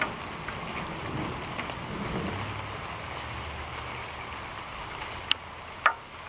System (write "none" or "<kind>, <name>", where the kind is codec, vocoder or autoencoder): none